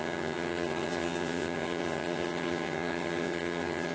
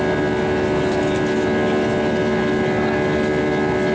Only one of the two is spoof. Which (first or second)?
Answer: first